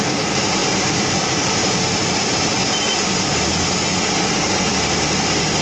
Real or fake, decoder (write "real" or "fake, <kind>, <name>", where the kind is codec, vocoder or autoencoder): real